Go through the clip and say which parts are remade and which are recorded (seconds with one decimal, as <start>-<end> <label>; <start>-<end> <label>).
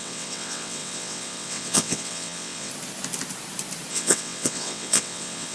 0.0-2.7 remade; 2.7-3.9 recorded; 3.9-5.5 remade